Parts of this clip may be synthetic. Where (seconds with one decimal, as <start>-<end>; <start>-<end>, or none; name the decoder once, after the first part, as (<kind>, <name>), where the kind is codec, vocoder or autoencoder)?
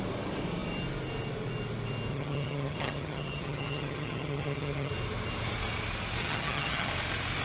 2.1-4.9 (vocoder, HiFi-GAN); 6.2-6.9